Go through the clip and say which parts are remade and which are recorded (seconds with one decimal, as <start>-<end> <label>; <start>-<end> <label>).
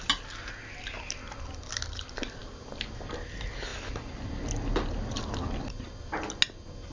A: 0.0-6.9 recorded